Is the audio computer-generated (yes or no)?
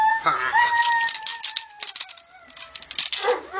no